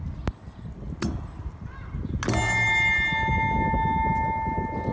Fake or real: real